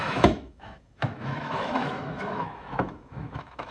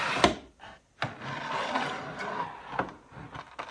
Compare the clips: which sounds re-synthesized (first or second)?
first